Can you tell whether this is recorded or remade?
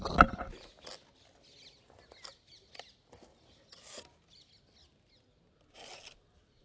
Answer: recorded